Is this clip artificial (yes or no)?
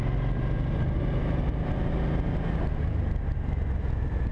no